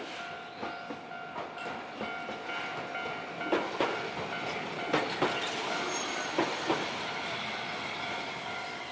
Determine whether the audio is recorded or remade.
recorded